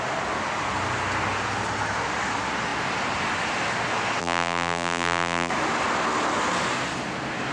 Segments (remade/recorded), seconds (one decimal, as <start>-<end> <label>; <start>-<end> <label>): 0.0-4.2 recorded; 4.2-5.5 remade; 5.5-7.5 recorded